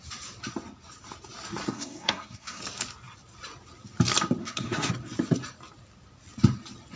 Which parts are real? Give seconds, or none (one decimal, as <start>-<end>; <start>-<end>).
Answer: 0.0-1.6; 2.6-4.4; 4.9-7.0